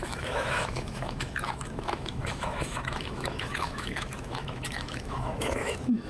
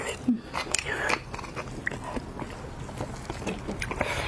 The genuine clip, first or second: second